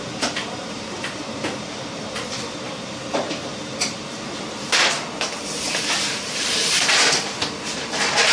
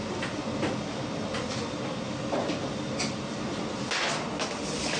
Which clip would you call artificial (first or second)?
first